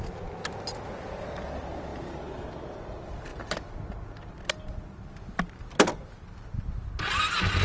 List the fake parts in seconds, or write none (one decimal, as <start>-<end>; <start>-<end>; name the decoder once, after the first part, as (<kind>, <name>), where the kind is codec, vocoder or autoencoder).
none